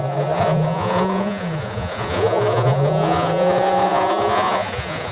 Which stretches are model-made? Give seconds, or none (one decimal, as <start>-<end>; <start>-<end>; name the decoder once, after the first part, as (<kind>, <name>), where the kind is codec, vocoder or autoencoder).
0.0-5.1 (vocoder, Vocos)